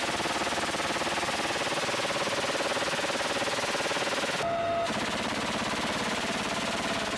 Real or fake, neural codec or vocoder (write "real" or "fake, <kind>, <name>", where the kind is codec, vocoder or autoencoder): real